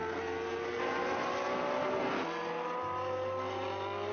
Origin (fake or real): real